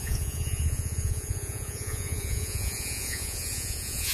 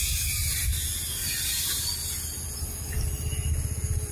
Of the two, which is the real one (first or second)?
second